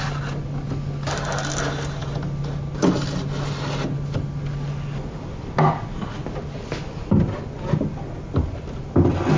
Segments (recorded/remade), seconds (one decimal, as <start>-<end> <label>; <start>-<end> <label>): 0.0-9.4 recorded